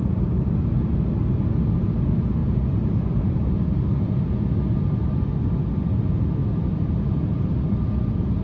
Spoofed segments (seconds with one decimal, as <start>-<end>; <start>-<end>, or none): 2.4-4.2; 6.4-7.7